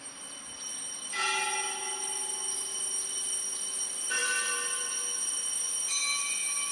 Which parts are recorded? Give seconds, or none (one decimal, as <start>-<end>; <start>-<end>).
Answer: 0.0-6.7

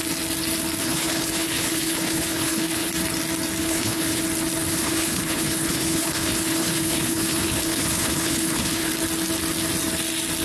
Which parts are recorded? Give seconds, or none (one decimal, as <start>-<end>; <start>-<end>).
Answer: 0.0-0.8; 2.9-3.6; 4.2-4.7; 8.9-10.4